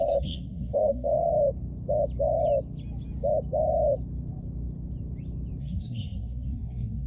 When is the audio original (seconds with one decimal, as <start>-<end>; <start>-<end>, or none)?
1.3-5.6